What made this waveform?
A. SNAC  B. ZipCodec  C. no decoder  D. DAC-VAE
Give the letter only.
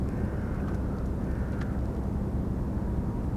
C